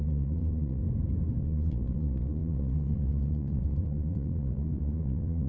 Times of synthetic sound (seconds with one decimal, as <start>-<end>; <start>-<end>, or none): 0.0-0.8; 1.4-5.5